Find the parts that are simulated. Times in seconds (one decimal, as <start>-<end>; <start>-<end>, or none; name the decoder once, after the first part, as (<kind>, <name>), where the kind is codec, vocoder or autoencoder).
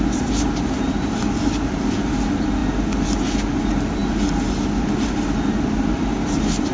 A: none